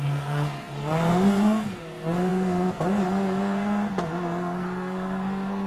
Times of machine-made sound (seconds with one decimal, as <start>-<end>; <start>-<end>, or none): 0.0-5.7